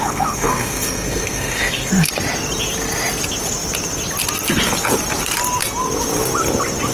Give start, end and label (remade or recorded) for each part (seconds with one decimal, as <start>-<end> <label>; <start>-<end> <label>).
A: 0.0-1.9 remade; 1.9-6.9 recorded